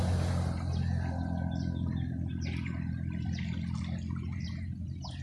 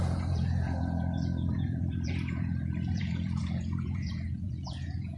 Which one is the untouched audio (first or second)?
first